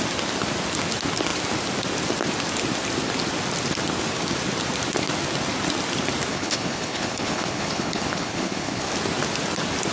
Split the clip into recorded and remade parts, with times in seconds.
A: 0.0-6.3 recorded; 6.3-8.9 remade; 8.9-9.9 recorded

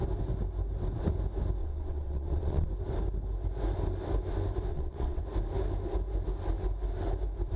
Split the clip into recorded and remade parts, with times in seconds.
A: 0.0-1.6 recorded; 1.6-2.7 remade; 2.7-4.7 recorded; 4.7-5.2 remade; 5.2-7.6 recorded

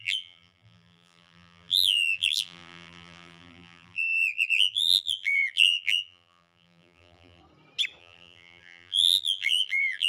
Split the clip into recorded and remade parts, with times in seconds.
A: 0.0-7.4 remade; 7.4-8.0 recorded; 8.0-10.1 remade

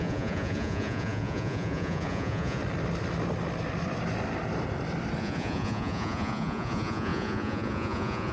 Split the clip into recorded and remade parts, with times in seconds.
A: 0.0-2.6 remade; 2.6-5.2 recorded; 5.2-8.3 remade

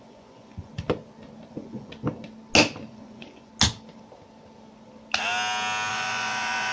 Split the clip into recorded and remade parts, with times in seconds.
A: 0.0-0.7 remade; 0.7-1.5 recorded; 1.5-1.9 remade; 1.9-2.9 recorded; 2.9-3.5 remade; 3.5-5.9 recorded; 5.9-6.7 remade

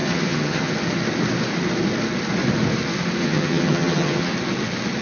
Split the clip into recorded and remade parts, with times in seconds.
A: 0.0-0.7 remade; 0.7-3.2 recorded; 3.2-4.3 remade; 4.3-5.0 recorded